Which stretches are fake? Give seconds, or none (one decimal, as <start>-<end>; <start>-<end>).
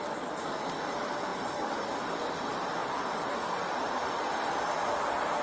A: none